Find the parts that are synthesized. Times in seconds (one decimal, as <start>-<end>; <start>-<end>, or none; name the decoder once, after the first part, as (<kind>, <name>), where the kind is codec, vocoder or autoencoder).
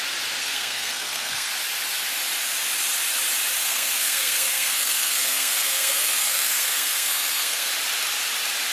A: 0.4-1.5 (codec, SNAC); 3.6-7.7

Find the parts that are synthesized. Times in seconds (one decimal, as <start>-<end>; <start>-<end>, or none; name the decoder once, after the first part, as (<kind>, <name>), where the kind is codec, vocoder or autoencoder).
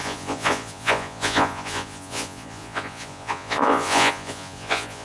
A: 0.0-5.0 (vocoder, Vocos)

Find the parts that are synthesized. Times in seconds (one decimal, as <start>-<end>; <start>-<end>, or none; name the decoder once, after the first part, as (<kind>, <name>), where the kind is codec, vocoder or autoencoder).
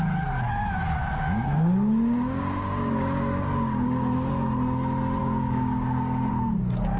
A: 1.0-4.3 (codec, DAC); 5.2-6.3